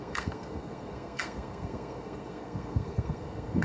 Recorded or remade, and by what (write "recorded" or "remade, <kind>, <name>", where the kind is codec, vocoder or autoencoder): remade, codec, SNAC